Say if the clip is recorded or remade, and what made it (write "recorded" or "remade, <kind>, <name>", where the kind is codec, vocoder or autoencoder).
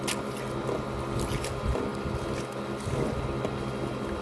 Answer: recorded